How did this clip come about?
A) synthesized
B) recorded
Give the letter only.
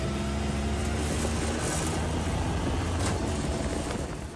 B